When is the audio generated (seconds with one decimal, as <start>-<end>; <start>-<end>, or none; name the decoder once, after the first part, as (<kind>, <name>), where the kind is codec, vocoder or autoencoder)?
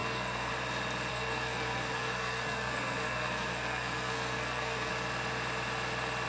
0.0-0.5 (codec, SNAC); 1.1-4.9